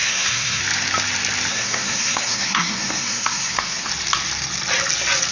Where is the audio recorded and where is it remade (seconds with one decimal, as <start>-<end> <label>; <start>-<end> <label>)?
0.0-0.6 remade; 0.6-1.5 recorded; 1.5-3.9 remade; 3.9-5.3 recorded